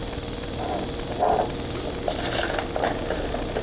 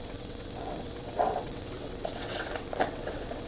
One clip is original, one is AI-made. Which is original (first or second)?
first